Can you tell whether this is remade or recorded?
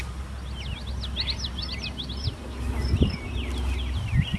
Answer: recorded